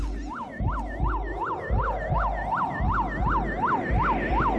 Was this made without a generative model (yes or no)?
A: yes